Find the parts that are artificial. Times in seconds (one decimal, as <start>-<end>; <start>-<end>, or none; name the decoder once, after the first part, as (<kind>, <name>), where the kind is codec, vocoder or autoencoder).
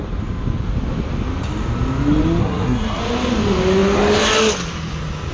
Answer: 2.4-3.0 (codec, SNAC)